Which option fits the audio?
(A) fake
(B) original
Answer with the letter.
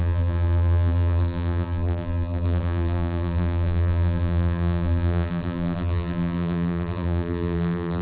A